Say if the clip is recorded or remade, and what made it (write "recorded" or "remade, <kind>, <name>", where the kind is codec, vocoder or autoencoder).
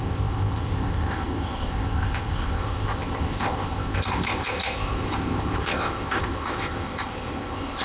remade, codec, ZipCodec